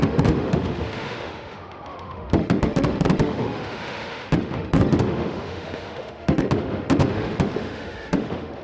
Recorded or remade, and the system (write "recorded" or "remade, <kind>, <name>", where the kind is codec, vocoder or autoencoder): remade, autoencoder, DAC-VAE